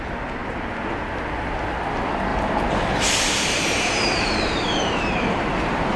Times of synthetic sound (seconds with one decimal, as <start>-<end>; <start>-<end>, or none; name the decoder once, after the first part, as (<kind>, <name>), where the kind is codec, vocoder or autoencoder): 2.3-6.0 (vocoder, BigVGAN v2)